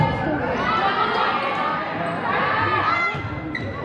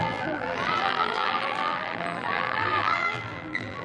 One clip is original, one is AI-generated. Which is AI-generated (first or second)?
second